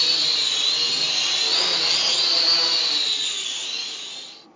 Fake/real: real